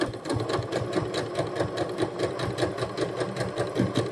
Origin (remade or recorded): recorded